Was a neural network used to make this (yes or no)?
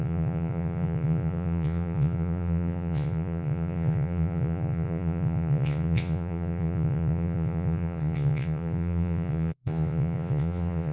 yes